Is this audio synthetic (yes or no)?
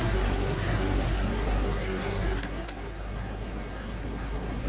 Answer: yes